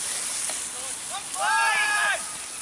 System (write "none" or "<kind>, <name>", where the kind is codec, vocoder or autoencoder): none